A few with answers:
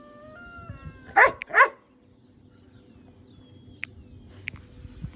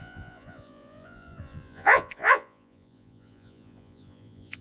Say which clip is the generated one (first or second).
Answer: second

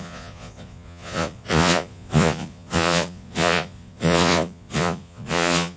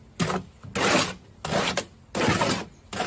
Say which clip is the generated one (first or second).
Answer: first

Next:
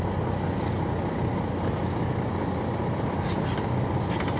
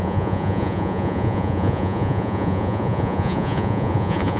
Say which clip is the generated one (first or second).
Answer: second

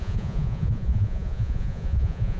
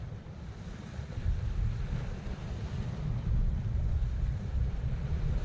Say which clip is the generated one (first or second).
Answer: first